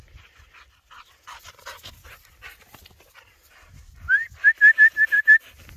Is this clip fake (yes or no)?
no